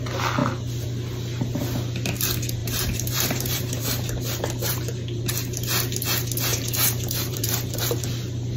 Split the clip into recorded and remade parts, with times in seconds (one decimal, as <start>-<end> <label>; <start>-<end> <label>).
0.0-2.6 recorded; 2.6-5.2 remade; 5.2-6.5 recorded; 6.5-7.8 remade; 7.8-8.6 recorded